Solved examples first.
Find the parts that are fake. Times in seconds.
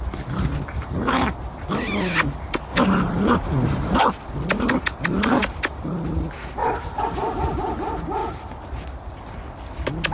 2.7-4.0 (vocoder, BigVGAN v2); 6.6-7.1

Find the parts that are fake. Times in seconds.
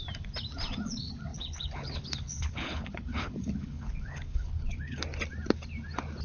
1.3-5.0 (codec, HILCodec)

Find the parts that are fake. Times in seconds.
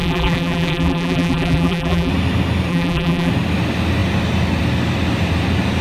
0.0-2.1 (vocoder, BigVGAN v2); 2.7-3.3